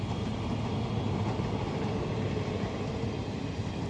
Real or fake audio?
real